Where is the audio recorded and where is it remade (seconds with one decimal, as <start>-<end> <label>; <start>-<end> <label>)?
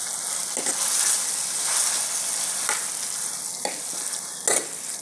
0.0-5.0 recorded